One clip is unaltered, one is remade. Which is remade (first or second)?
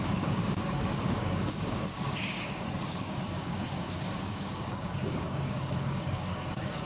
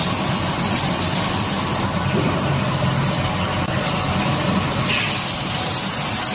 first